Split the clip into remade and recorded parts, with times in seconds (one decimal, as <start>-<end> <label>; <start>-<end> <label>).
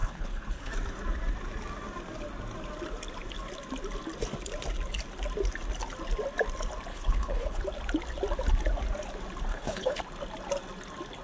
0.0-0.7 remade; 0.7-6.9 recorded; 6.9-7.6 remade; 7.6-9.5 recorded; 9.5-10.0 remade; 10.0-11.2 recorded